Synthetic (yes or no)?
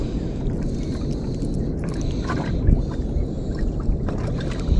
no